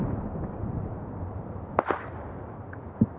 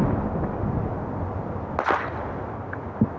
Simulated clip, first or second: first